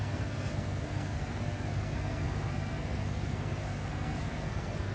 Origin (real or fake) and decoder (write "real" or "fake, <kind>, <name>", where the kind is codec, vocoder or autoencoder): fake, codec, SNAC